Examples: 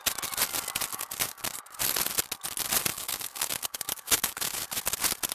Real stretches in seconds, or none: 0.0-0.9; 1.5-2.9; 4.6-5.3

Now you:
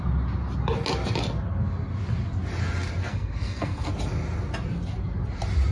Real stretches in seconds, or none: 0.0-3.1; 3.9-5.7